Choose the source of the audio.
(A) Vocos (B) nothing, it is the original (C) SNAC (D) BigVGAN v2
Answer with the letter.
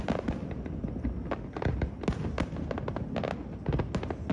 B